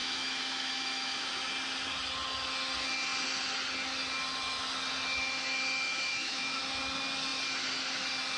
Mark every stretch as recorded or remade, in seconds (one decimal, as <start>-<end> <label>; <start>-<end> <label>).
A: 0.0-1.3 remade; 1.3-5.9 recorded; 5.9-6.6 remade; 6.6-8.4 recorded